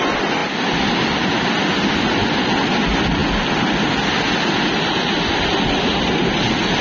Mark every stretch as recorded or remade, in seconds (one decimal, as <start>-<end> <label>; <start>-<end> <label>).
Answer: 0.0-6.8 recorded